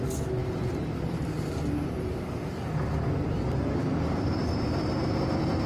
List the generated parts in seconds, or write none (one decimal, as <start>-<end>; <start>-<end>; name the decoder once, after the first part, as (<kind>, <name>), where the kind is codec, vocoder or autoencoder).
0.4-2.2 (vocoder, BigVGAN v2); 3.8-4.8

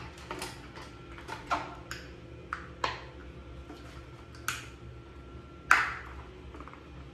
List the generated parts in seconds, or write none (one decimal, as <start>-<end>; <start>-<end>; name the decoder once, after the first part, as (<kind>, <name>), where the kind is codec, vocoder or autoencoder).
none

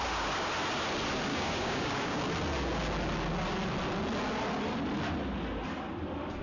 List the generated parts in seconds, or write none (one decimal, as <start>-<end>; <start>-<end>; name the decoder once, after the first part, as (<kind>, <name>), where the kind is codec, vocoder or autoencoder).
1.3-2.2 (codec, DAC)

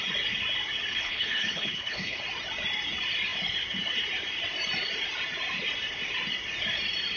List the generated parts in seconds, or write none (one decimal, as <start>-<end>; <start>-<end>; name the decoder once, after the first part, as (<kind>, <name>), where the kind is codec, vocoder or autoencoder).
0.9-2.2 (codec, HILCodec)